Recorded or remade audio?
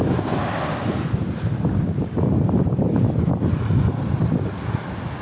recorded